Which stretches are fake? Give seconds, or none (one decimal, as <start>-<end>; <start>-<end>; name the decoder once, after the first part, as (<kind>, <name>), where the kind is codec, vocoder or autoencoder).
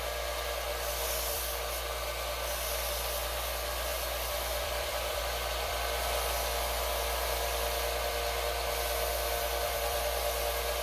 0.0-10.8 (vocoder, BigVGAN v2)